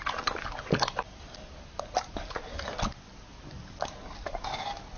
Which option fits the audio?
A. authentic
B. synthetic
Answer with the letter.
A